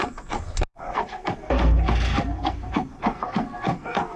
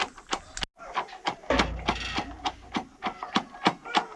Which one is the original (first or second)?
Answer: second